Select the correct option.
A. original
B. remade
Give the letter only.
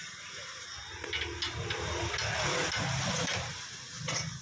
A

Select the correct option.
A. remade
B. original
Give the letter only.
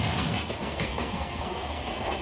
A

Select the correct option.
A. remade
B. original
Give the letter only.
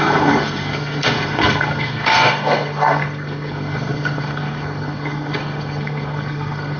A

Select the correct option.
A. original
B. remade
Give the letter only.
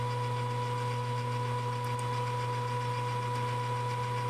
A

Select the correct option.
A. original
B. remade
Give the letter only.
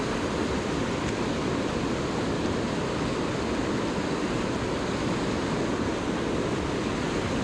A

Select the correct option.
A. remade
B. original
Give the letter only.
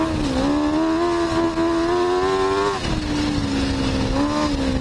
B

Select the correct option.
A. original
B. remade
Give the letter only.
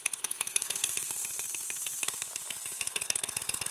B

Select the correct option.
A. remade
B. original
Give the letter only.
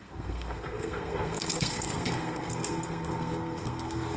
A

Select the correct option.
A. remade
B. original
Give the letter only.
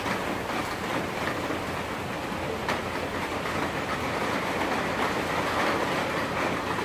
B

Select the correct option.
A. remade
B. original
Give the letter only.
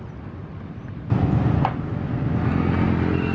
B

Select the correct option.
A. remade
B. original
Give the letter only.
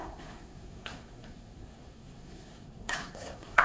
A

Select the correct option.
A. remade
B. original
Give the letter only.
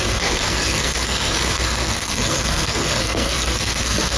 A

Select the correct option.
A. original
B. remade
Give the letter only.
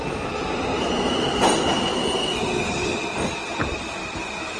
A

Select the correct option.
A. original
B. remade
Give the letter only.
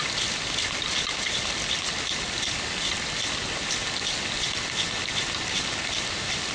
A